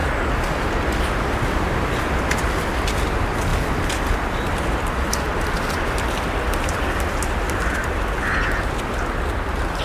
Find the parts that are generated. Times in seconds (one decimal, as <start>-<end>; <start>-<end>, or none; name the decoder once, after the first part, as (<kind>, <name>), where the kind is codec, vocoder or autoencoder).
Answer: none